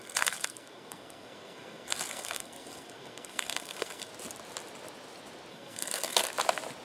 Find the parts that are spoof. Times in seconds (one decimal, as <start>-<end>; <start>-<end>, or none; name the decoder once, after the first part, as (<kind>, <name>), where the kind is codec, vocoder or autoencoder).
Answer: 0.0-4.1 (codec, SNAC); 5.5-6.2